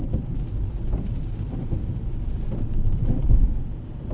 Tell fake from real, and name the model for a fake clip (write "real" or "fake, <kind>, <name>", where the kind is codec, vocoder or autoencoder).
real